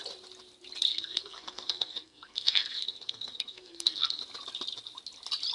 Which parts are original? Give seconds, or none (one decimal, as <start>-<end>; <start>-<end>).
0.0-0.9; 4.2-5.5